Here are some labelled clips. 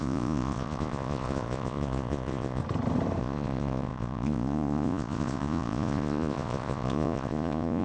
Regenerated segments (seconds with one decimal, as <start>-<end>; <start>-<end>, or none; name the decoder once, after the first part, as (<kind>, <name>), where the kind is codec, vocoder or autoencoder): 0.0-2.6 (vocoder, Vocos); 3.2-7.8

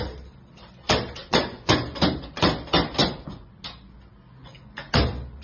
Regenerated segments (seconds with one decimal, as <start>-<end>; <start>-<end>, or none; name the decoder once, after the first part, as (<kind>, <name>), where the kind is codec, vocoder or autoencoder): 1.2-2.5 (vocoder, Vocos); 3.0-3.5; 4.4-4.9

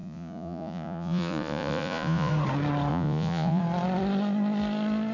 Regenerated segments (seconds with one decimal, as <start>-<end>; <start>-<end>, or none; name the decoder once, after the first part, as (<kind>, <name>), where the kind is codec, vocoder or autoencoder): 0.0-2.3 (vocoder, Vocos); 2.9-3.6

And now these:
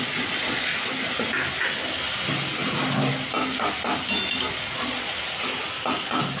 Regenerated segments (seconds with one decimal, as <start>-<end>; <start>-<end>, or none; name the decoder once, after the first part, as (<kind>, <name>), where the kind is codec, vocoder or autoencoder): 0.0-0.7 (vocoder, Vocos); 4.5-5.1

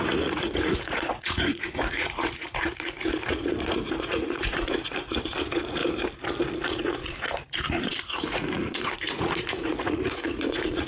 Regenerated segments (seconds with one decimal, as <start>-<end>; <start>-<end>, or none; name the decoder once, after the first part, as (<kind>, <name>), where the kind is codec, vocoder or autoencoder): 0.0-5.8 (vocoder, Vocos); 6.6-10.9

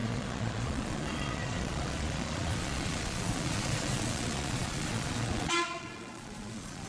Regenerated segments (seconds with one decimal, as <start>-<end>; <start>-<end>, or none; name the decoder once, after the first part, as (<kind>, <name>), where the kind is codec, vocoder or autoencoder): 0.0-6.9 (vocoder, Vocos)